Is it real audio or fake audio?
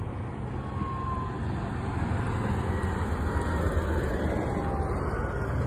real